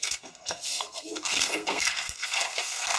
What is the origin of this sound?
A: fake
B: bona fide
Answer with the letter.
A